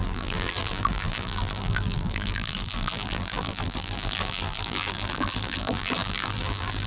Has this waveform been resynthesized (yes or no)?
yes